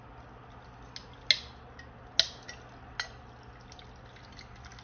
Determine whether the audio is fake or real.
real